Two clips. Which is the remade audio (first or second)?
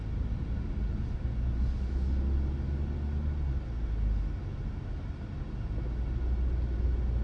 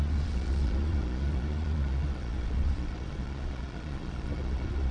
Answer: second